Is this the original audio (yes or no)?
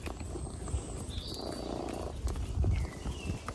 yes